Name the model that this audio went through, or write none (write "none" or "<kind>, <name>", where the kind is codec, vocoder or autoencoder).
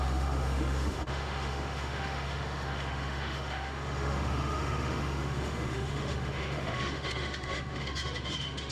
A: autoencoder, DAC-VAE